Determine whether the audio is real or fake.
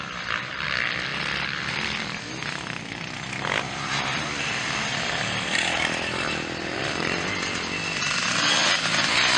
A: fake